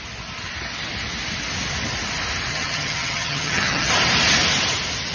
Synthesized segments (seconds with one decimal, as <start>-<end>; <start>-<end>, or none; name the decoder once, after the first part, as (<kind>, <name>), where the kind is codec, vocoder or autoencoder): 2.5-3.9 (vocoder, HiFi-GAN)